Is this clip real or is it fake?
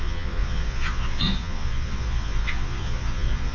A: fake